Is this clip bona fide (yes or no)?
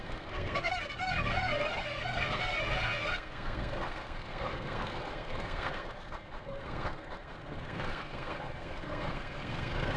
no